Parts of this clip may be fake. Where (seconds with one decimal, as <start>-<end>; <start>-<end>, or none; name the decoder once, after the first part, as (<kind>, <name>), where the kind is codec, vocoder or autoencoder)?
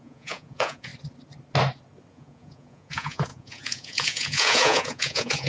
0.0-0.9 (vocoder, Vocos); 2.1-5.5